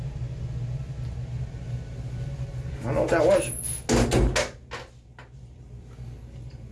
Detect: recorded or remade recorded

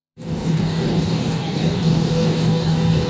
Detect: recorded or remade remade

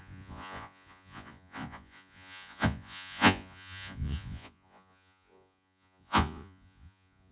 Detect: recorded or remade remade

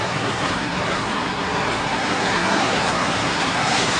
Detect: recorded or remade remade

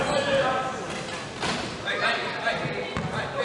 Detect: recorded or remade recorded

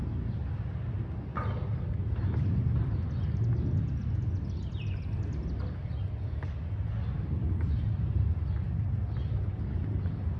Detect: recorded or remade recorded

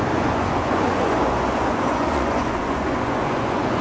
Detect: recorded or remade remade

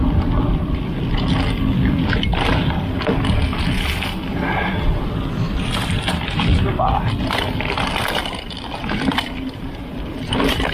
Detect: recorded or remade recorded